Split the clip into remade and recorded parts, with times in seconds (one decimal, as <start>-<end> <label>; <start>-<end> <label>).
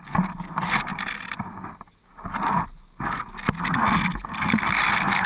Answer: 0.0-5.3 recorded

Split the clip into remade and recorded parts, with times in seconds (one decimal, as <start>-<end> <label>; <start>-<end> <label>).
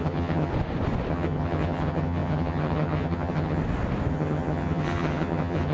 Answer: 0.0-0.5 remade; 0.5-1.1 recorded; 1.1-3.6 remade; 3.6-4.1 recorded; 4.1-5.7 remade